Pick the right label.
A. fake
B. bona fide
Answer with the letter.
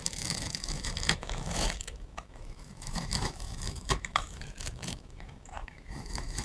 A